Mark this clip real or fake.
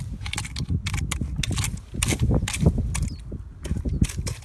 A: real